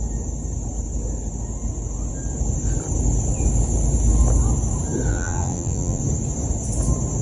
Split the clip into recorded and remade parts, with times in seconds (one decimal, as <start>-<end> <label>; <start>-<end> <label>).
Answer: 0.0-5.1 recorded; 5.1-6.0 remade; 6.0-7.2 recorded